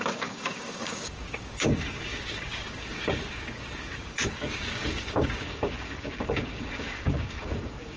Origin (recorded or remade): remade